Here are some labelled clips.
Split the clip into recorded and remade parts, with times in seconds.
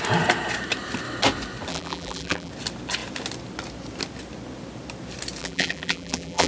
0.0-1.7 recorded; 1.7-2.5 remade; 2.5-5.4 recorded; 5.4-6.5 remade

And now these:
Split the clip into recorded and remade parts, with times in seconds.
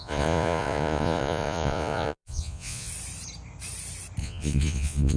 0.0-2.9 remade; 2.9-4.2 recorded; 4.2-5.2 remade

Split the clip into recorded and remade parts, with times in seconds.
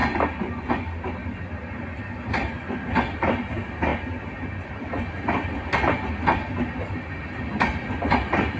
0.0-8.6 recorded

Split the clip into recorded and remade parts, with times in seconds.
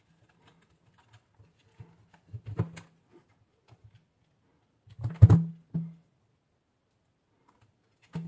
0.0-8.3 recorded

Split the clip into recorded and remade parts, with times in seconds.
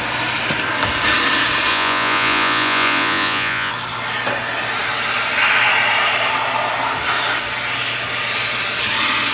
0.0-1.7 recorded; 1.7-3.7 remade; 3.7-9.3 recorded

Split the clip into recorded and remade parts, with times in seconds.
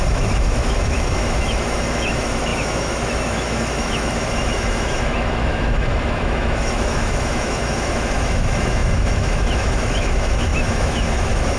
0.0-11.6 remade